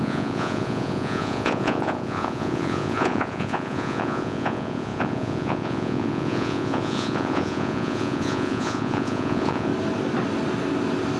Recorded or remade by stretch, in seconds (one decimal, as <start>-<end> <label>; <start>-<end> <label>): 0.0-9.7 remade; 9.7-11.2 recorded